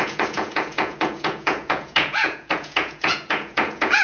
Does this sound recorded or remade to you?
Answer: remade